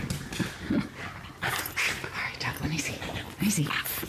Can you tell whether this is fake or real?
real